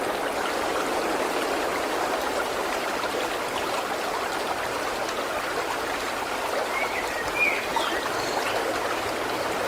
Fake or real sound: fake